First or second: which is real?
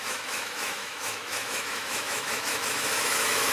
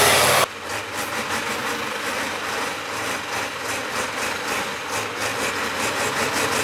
second